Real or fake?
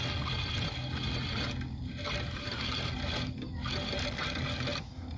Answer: real